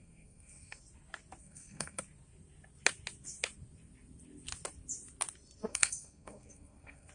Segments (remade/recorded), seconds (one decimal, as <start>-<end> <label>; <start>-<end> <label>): 0.0-0.8 remade; 0.8-1.4 recorded; 1.4-2.0 remade; 2.0-5.7 recorded; 5.7-7.1 remade